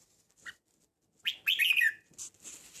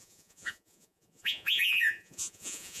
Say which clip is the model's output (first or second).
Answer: second